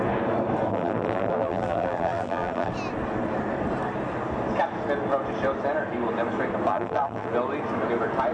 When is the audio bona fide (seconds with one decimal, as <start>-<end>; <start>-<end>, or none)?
0.0-0.7; 2.7-6.7; 7.3-8.3